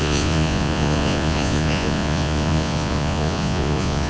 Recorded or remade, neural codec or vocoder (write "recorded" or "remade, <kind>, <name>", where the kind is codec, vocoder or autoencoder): remade, vocoder, Vocos